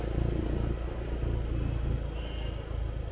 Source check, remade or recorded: recorded